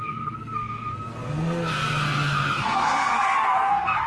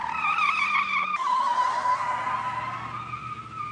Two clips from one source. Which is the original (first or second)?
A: second